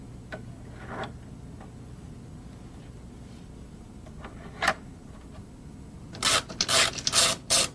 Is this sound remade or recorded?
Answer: recorded